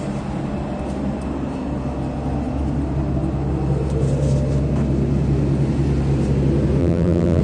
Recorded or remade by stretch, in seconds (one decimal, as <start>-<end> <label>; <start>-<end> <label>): 0.0-6.8 recorded; 6.8-7.4 remade